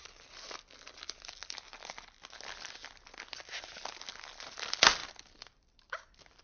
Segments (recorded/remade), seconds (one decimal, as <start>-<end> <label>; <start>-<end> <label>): 0.0-5.0 recorded; 5.0-6.4 remade